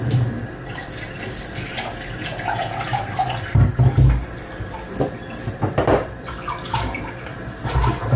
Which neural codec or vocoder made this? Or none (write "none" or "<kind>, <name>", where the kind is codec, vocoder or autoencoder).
none